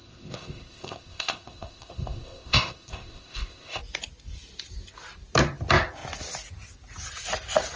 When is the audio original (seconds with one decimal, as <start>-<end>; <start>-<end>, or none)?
3.8-7.8